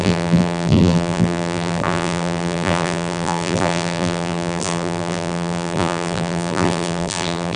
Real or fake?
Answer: fake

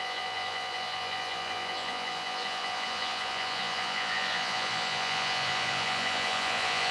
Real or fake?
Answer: fake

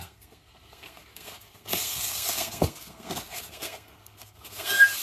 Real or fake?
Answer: fake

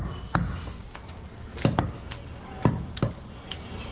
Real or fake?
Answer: real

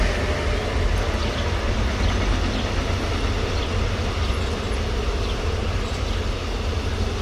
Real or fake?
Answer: real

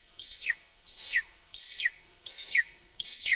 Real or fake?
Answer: fake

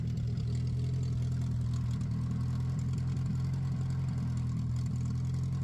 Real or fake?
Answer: real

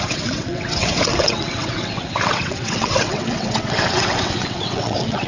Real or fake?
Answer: fake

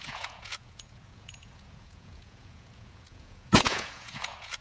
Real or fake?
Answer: fake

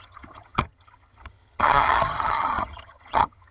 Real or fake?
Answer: fake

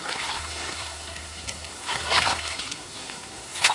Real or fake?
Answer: fake